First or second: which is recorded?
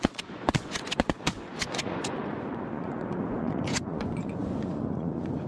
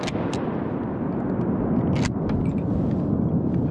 second